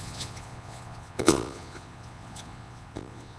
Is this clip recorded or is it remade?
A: remade